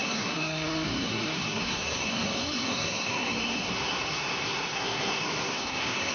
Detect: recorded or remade remade